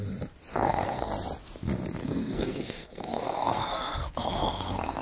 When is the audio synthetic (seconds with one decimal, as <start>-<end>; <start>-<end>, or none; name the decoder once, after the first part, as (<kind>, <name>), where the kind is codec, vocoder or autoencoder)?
0.5-1.1 (codec, SNAC); 2.0-5.0